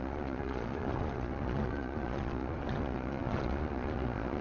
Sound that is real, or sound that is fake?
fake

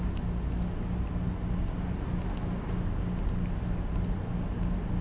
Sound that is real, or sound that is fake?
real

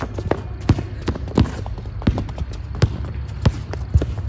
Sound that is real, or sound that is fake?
real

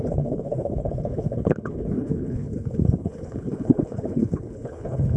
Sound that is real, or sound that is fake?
fake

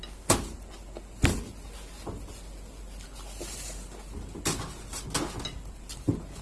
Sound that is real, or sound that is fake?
real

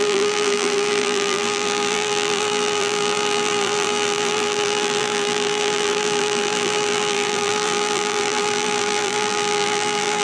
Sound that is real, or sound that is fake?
fake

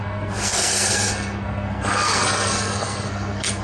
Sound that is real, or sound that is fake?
fake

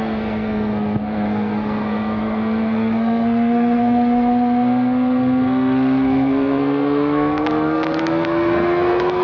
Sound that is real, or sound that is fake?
fake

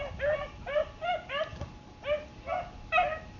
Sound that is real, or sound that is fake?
real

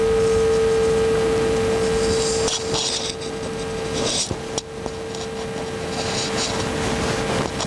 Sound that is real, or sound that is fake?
real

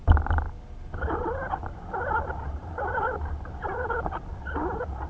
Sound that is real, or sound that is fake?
real